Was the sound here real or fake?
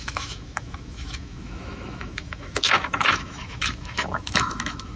fake